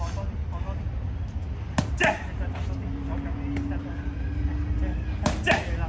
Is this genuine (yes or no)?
yes